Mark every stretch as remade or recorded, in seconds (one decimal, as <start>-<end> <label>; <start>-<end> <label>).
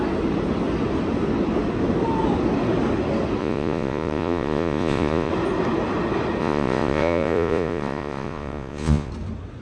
0.0-3.4 recorded; 3.4-5.3 remade; 5.3-6.4 recorded; 6.4-9.1 remade; 9.1-9.6 recorded